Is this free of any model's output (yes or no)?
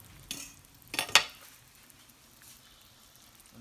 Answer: yes